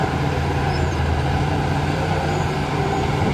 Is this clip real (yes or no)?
no